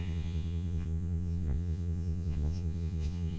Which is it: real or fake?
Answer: fake